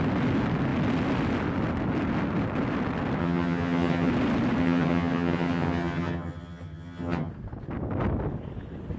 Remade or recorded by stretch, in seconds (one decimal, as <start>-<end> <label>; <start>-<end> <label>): 0.0-3.2 recorded; 3.2-4.1 remade; 4.1-4.6 recorded; 4.6-7.3 remade; 7.3-9.0 recorded